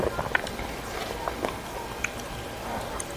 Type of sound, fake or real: real